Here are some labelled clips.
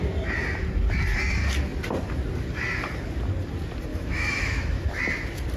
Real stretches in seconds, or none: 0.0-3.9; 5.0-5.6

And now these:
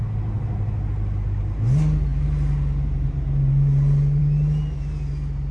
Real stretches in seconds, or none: 0.0-5.5

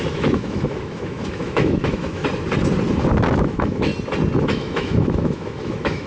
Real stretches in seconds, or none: 2.2-3.3; 3.9-4.4

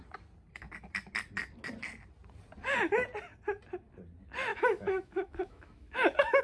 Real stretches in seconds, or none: 0.0-4.5

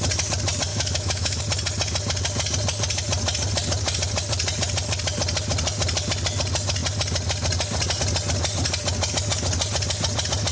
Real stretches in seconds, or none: 0.0-0.7; 1.4-10.5

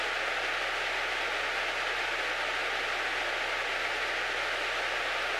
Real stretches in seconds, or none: 0.0-5.4

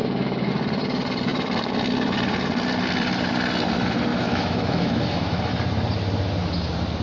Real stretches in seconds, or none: 0.5-4.1; 5.5-7.0

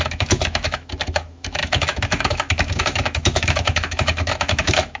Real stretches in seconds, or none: none